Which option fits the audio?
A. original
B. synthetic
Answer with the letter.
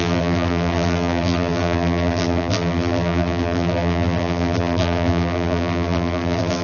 B